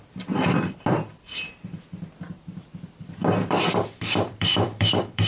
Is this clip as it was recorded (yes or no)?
no